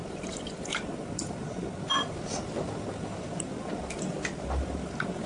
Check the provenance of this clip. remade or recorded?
recorded